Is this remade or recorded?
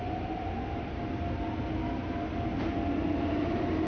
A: recorded